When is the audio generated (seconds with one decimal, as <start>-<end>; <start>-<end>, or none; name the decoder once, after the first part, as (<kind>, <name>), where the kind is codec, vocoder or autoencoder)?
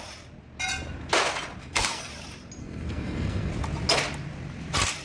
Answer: 1.6-2.1 (codec, SNAC); 2.6-3.5